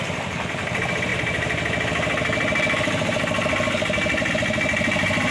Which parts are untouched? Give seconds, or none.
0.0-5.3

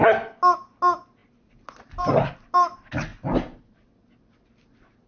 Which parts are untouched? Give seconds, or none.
0.0-5.1

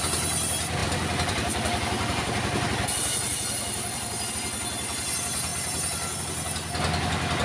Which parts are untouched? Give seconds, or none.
0.0-0.8; 4.3-7.4

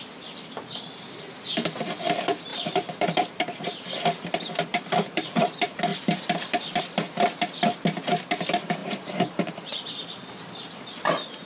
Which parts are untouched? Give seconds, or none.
0.0-2.5; 4.2-4.7; 5.4-8.8; 10.2-11.5